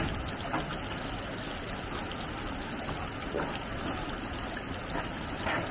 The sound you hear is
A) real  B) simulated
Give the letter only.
A